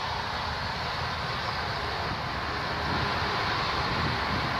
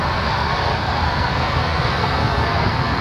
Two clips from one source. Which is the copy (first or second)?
second